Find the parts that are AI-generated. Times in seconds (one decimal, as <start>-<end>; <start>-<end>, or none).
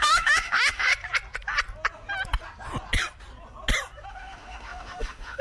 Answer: 0.0-0.9; 4.1-5.4